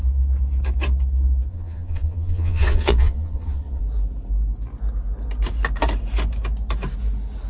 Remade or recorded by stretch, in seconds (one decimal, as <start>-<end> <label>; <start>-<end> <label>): 0.0-1.5 recorded; 1.5-3.8 remade; 3.8-7.5 recorded